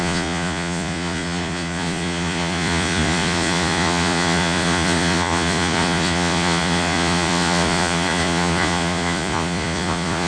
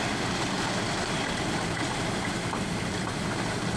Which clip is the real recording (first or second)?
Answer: second